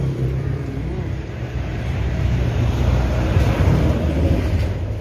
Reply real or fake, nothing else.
fake